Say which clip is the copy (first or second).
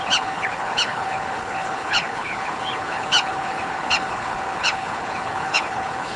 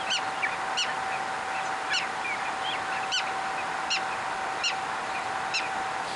first